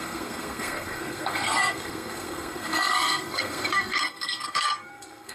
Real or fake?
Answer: fake